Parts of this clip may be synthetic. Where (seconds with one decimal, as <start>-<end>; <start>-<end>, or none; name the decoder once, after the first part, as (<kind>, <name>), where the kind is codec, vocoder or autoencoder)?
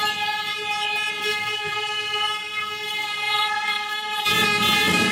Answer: 1.2-4.2 (codec, SNAC)